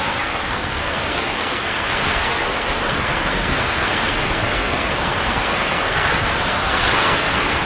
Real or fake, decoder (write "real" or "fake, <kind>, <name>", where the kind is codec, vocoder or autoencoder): fake, codec, SNAC